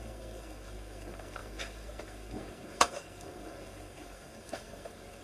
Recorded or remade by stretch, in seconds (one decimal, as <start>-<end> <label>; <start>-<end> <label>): 0.0-5.2 remade